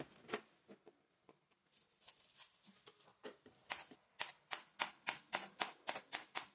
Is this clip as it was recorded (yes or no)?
yes